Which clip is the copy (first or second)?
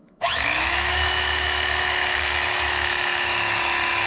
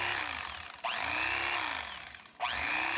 first